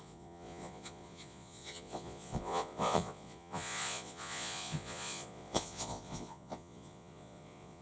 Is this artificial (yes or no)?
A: yes